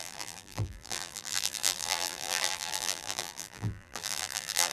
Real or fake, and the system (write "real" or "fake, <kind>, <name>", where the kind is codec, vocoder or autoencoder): fake, vocoder, BigVGAN v2